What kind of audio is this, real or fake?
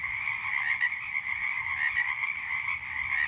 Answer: real